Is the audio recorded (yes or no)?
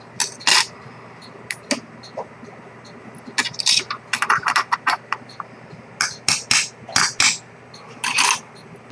yes